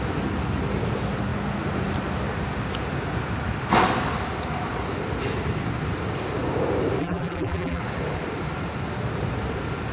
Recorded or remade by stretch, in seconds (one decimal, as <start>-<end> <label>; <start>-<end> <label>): 0.0-7.0 recorded; 7.0-7.8 remade; 7.8-9.9 recorded